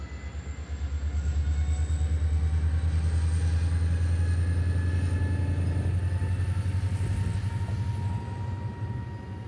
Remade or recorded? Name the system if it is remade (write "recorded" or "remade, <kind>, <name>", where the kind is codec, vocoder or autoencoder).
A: recorded